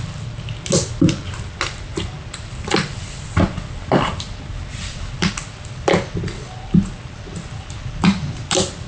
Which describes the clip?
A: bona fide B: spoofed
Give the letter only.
A